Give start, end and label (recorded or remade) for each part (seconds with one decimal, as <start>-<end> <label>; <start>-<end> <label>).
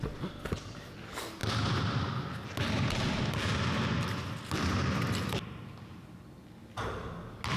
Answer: 0.0-7.6 recorded